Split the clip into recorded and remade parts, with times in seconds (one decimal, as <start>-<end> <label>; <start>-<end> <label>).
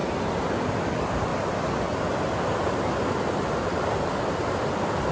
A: 0.0-0.7 recorded; 0.7-1.3 remade; 1.3-3.5 recorded; 3.5-5.1 remade